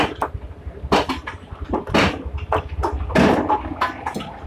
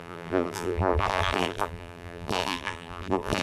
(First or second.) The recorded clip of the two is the first